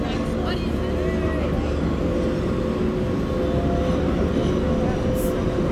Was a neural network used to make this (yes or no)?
no